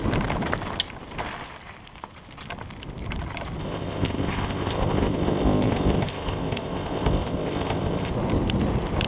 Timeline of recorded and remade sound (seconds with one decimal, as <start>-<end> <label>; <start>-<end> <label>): 0.0-3.6 recorded; 3.6-8.1 remade; 8.1-9.1 recorded